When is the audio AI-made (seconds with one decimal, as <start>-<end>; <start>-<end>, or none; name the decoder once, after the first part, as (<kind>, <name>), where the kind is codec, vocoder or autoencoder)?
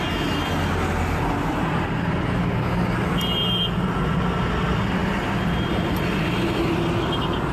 none